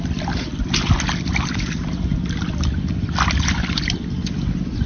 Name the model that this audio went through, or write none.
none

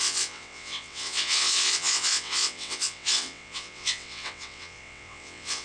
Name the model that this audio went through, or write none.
vocoder, WaveNeXt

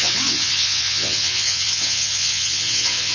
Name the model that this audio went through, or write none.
vocoder, WaveNeXt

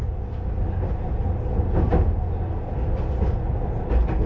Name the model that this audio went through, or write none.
none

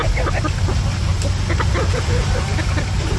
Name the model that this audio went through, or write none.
none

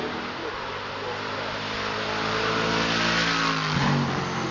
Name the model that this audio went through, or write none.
none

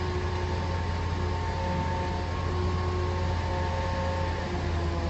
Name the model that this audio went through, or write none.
none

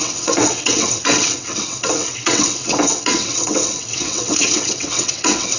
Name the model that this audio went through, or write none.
vocoder, WaveNeXt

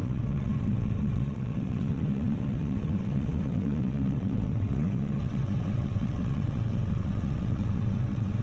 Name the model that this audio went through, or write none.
vocoder, WaveNeXt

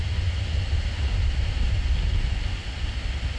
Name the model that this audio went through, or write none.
none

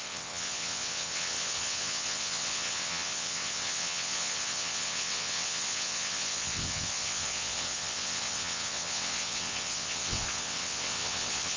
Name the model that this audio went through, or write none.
vocoder, WaveNeXt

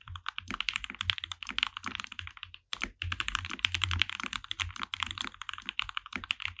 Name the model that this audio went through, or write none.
none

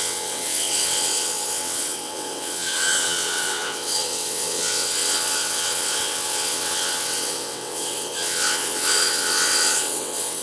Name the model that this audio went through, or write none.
vocoder, WaveNeXt